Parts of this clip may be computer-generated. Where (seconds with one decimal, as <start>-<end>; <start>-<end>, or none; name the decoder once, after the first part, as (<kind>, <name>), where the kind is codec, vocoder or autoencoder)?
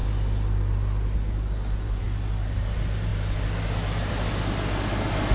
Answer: none